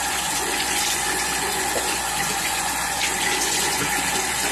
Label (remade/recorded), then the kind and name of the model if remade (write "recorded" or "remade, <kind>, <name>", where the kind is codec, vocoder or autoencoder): remade, vocoder, Vocos